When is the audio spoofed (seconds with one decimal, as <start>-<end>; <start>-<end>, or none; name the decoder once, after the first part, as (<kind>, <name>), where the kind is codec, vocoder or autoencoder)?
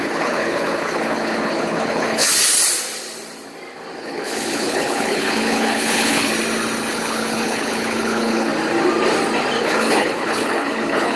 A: 0.0-2.3 (codec, HILCodec); 4.0-6.3; 6.9-8.5; 9.6-11.2